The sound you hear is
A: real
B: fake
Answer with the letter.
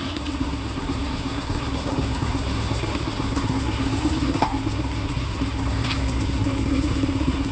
B